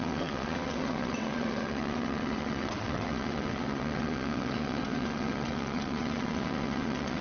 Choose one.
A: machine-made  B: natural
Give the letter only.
A